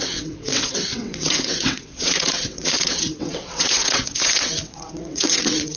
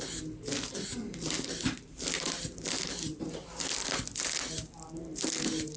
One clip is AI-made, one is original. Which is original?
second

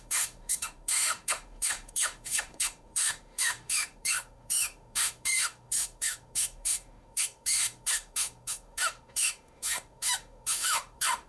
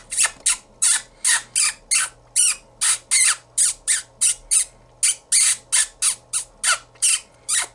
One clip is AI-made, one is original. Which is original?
second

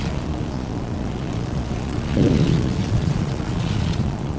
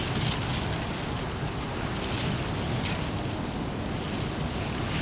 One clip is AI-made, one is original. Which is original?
second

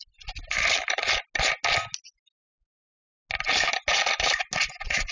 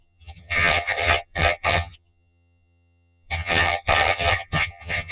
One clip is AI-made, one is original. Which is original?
first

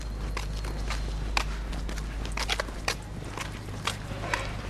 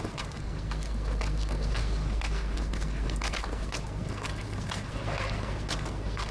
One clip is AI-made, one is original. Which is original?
first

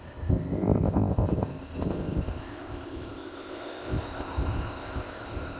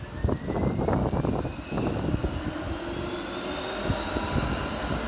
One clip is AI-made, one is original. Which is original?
second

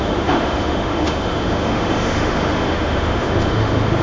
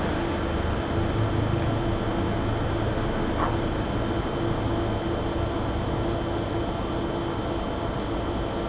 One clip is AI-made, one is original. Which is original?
second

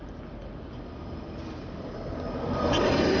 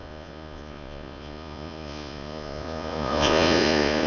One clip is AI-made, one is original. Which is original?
first